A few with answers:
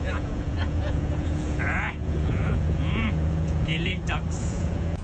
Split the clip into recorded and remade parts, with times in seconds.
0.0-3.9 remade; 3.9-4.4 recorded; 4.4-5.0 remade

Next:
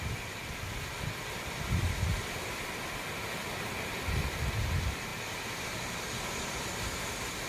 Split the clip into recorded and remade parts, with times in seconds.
0.0-5.1 recorded; 5.1-6.0 remade; 6.0-7.5 recorded

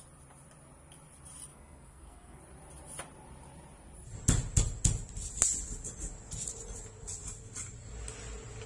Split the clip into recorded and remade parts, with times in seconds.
0.0-1.5 recorded; 1.5-2.4 remade; 2.4-8.7 recorded

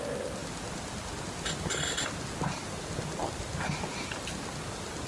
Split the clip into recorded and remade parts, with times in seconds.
0.0-5.1 recorded

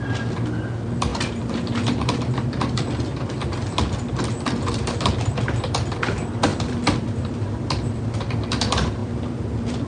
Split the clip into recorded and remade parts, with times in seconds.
0.0-1.1 recorded; 1.1-5.4 remade; 5.4-6.5 recorded; 6.5-8.3 remade; 8.3-9.0 recorded; 9.0-9.9 remade

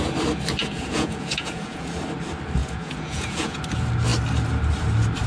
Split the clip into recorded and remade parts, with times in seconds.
0.0-0.6 recorded; 0.6-2.0 remade; 2.0-2.6 recorded; 2.6-3.6 remade; 3.6-5.3 recorded